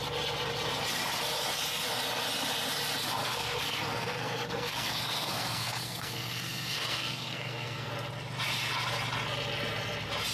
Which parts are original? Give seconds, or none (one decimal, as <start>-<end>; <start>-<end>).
0.0-3.2; 7.9-10.3